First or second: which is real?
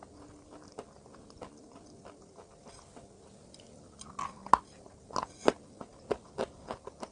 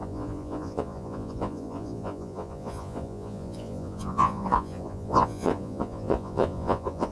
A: first